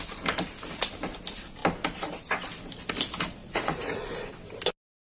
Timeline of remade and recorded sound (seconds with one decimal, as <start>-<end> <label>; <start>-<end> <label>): 0.0-3.4 recorded; 3.4-4.3 remade; 4.3-5.1 recorded